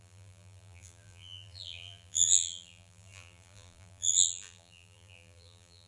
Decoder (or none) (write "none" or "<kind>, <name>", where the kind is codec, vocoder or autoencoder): vocoder, BigVGAN v2